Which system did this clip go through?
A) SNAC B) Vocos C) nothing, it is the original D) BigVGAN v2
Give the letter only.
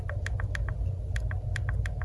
C